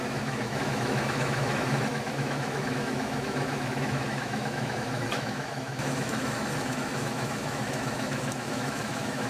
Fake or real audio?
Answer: fake